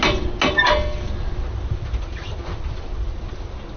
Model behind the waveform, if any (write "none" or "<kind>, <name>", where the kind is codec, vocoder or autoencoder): none